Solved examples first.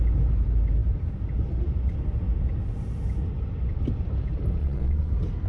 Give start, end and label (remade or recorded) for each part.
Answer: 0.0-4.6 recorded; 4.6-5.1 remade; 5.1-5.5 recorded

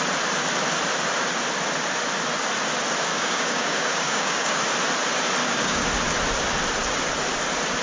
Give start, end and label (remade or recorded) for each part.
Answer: 0.0-3.1 recorded; 3.1-4.6 remade; 4.6-5.4 recorded; 5.4-5.9 remade; 5.9-7.8 recorded

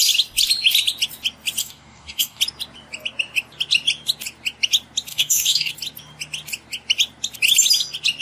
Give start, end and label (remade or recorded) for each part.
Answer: 0.0-1.6 recorded; 1.6-2.4 remade; 2.4-5.1 recorded; 5.1-5.7 remade; 5.7-8.2 recorded

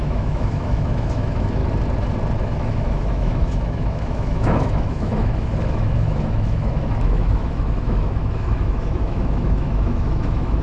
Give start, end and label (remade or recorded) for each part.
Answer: 0.0-1.6 remade; 1.6-2.4 recorded; 2.4-10.6 remade

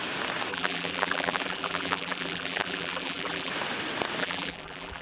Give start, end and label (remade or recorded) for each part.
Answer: 0.0-0.5 recorded; 0.5-3.5 remade; 3.5-4.2 recorded; 4.2-5.0 remade

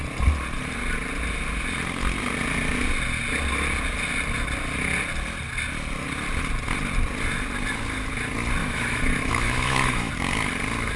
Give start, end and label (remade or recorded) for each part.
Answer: 0.0-8.6 recorded; 8.6-10.1 remade; 10.1-11.0 recorded

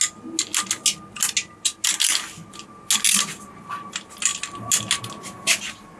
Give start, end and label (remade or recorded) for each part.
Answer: 0.0-6.0 recorded

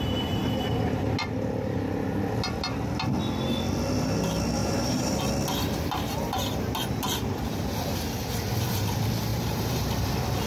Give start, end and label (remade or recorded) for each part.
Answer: 0.0-4.6 recorded; 4.6-5.2 remade; 5.2-9.3 recorded; 9.3-10.1 remade; 10.1-10.5 recorded